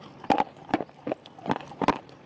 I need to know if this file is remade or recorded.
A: recorded